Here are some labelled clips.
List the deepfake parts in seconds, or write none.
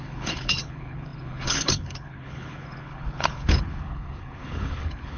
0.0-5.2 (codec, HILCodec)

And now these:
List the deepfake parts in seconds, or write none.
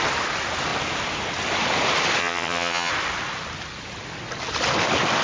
2.2-2.9 (vocoder, HiFi-GAN)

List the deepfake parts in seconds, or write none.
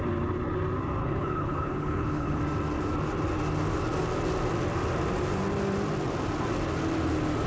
1.0-2.4 (codec, HILCodec)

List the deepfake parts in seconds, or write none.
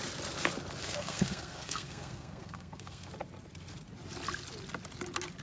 0.8-3.1 (codec, SNAC)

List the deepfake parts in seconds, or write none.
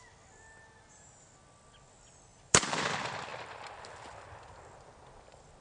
2.3-2.8 (vocoder, BigVGAN v2)